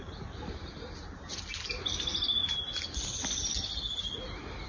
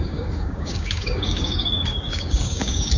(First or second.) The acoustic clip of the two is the first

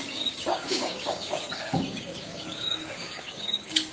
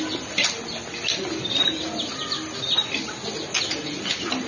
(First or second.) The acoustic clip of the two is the second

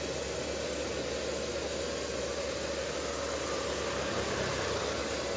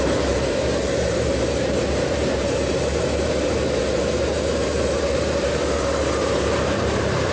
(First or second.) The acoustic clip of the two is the first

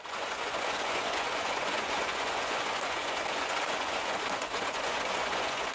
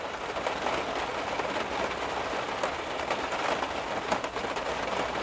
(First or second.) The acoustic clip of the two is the second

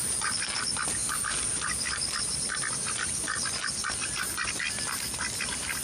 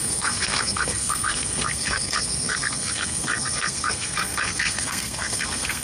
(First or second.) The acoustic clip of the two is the first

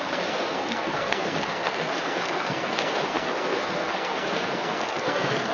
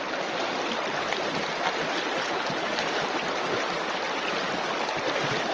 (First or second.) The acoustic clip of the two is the second